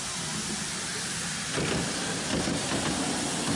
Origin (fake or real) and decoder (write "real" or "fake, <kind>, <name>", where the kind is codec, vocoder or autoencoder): real